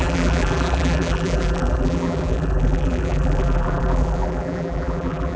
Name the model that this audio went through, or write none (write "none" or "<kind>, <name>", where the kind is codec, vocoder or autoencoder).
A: vocoder, BigVGAN v2